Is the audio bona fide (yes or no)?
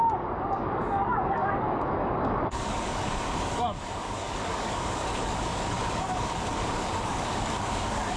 no